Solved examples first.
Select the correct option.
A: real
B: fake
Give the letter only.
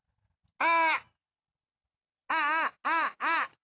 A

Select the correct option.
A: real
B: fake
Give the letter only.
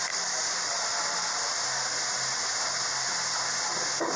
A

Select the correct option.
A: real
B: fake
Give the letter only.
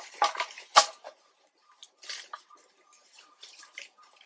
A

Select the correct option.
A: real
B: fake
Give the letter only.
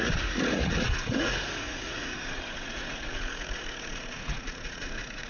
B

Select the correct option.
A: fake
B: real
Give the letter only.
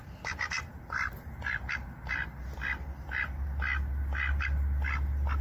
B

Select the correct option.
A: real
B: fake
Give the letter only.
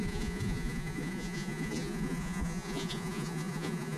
B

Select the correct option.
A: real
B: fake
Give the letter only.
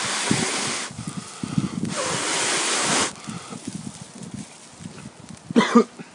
A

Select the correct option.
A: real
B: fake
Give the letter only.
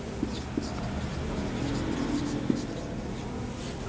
A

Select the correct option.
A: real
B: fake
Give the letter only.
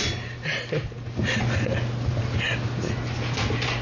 A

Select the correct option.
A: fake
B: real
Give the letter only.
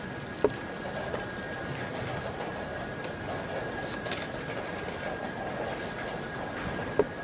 B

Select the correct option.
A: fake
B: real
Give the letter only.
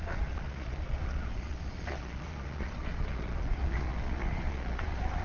A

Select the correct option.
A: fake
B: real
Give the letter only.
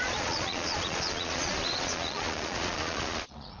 A